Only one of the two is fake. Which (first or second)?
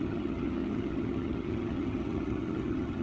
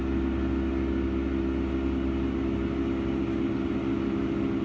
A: first